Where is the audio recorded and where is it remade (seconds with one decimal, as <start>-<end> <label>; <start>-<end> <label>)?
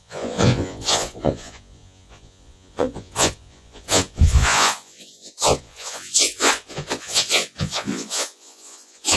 0.0-9.2 remade